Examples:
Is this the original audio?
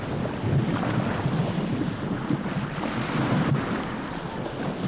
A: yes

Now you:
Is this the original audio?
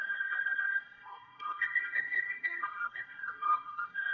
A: no